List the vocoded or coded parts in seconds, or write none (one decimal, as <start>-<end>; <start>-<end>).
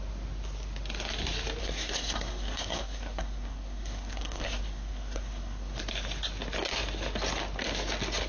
1.6-5.8